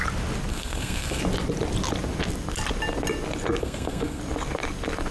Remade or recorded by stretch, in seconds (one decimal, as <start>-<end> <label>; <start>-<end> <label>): 0.0-0.5 recorded; 0.5-1.2 remade; 1.2-3.6 recorded; 3.6-4.2 remade; 4.2-5.1 recorded